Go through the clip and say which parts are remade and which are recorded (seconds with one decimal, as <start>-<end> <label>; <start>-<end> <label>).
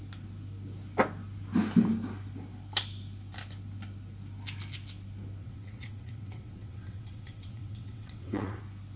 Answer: 0.0-5.4 recorded; 5.4-8.6 remade; 8.6-9.0 recorded